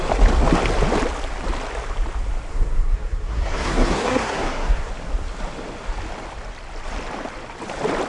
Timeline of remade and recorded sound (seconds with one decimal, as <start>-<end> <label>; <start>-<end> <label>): 0.0-2.5 recorded; 2.5-4.9 remade; 4.9-8.1 recorded